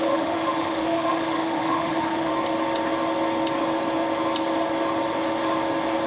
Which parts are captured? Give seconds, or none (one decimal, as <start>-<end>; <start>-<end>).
2.3-6.1